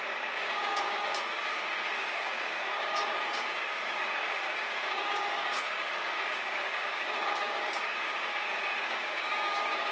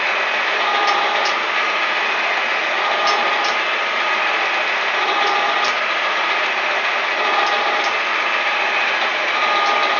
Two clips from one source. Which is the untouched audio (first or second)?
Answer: second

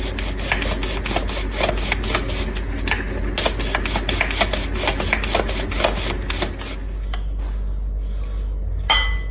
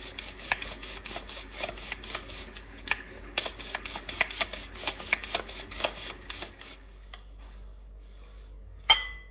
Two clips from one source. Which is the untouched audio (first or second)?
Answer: first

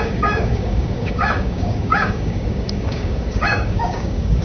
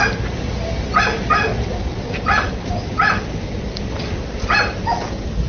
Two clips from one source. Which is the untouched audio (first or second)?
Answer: second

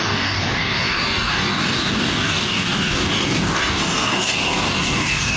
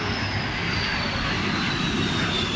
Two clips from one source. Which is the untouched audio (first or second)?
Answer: second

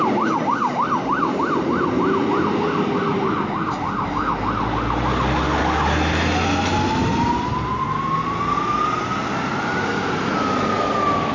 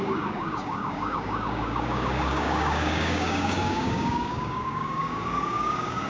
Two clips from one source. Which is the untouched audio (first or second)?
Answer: first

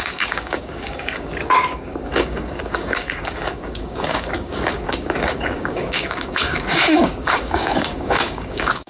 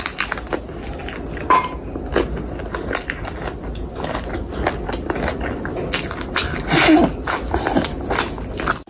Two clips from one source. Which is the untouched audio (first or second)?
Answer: second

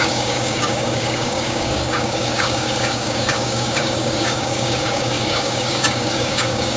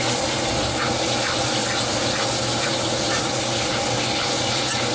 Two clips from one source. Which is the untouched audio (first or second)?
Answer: second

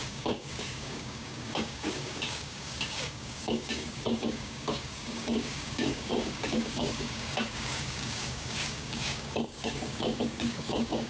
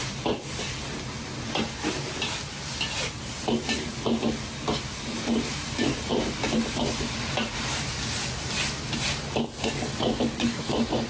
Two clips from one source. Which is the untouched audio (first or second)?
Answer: second